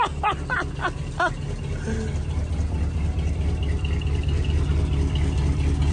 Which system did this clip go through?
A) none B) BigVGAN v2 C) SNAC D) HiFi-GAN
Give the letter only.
A